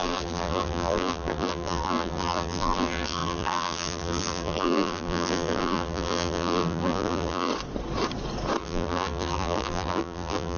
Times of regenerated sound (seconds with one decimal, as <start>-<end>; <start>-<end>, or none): 0.0-7.5; 8.6-10.6